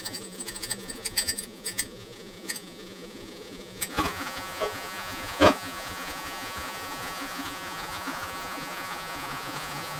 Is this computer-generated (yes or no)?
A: yes